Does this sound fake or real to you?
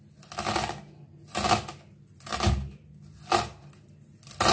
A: real